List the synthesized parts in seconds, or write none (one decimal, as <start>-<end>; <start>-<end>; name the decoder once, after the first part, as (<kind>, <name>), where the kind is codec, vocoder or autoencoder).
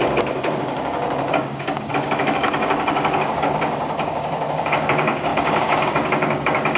0.0-6.8 (codec, DAC)